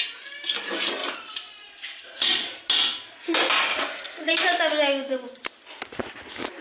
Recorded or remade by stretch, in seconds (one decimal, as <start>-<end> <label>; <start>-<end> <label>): 0.0-1.0 recorded; 1.0-2.6 remade; 2.6-3.7 recorded; 3.7-4.3 remade; 4.3-6.6 recorded

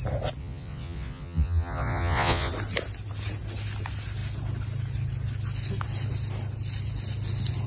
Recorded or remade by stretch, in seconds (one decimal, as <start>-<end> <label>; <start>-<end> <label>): 0.0-0.4 recorded; 0.4-2.5 remade; 2.5-7.7 recorded